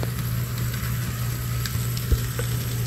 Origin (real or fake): real